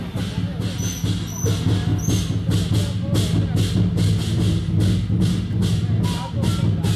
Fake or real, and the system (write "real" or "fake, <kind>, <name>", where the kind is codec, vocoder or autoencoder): real